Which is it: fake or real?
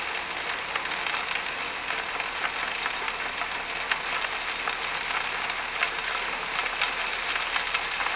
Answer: real